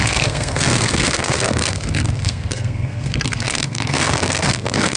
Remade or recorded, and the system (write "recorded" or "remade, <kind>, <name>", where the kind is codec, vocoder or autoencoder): remade, codec, SNAC